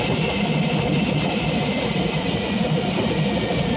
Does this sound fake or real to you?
real